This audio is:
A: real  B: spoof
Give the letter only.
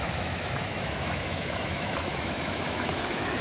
B